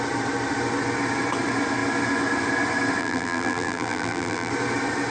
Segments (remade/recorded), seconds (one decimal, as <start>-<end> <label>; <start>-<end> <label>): 0.0-3.0 recorded; 3.0-4.5 remade; 4.5-5.1 recorded